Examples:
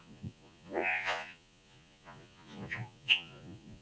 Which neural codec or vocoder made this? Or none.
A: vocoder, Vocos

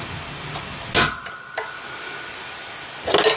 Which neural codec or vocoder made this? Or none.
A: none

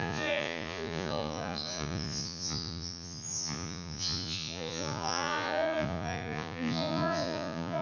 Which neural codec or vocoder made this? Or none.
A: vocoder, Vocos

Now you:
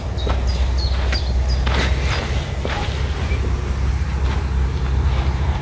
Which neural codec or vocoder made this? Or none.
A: none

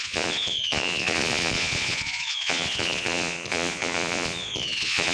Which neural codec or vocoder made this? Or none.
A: vocoder, Vocos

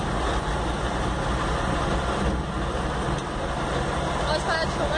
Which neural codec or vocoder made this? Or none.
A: none